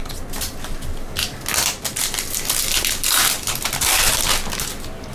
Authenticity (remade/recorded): recorded